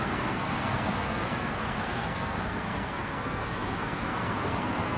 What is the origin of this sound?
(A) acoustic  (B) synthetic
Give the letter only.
B